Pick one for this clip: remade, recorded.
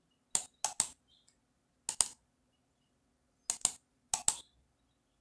recorded